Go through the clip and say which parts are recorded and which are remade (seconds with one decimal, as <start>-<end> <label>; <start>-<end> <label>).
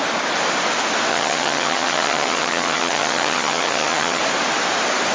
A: 0.0-1.1 recorded; 1.1-4.2 remade; 4.2-5.1 recorded